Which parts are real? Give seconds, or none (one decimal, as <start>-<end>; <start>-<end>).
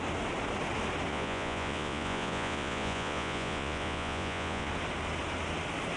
0.0-1.1; 4.7-6.0